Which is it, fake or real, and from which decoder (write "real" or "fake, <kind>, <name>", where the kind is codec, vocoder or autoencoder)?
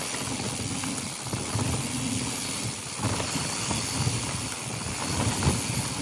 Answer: real